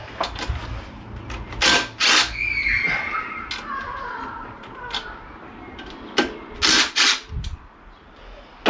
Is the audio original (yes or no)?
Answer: yes